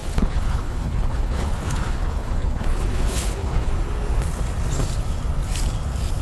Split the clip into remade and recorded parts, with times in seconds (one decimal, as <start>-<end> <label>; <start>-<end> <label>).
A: 0.0-3.7 remade; 3.7-6.2 recorded